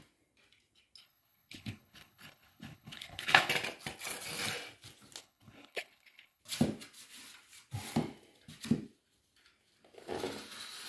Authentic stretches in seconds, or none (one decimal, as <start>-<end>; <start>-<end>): 0.0-1.0; 3.5-5.2; 6.4-10.9